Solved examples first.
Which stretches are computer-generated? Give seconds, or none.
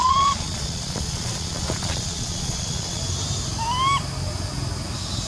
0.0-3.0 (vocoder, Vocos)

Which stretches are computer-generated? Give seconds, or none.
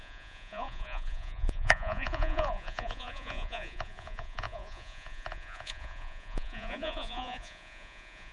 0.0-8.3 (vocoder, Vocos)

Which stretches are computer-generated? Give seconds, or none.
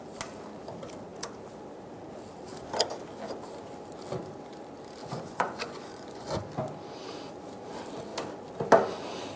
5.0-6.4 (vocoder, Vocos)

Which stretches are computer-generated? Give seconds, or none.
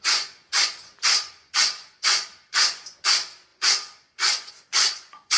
0.0-5.4 (vocoder, Vocos)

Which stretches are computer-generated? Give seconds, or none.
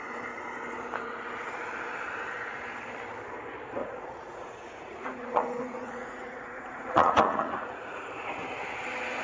3.8-8.0 (vocoder, Vocos)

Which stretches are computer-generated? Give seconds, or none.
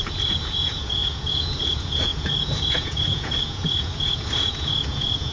0.0-5.3 (vocoder, Vocos)